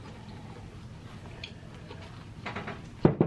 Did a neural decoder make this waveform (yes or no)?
no